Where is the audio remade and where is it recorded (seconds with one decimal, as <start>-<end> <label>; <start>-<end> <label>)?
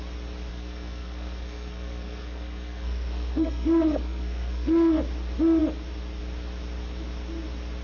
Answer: 0.0-0.5 recorded; 0.5-5.0 remade; 5.0-7.8 recorded